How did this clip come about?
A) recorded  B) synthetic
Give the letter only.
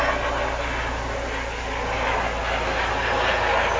A